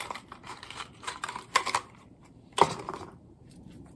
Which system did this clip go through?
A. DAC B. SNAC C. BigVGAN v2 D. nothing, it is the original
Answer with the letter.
C